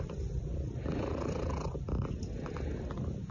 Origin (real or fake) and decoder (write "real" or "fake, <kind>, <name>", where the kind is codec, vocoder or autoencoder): real